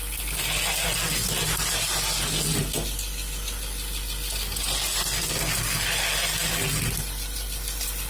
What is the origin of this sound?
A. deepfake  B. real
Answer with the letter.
B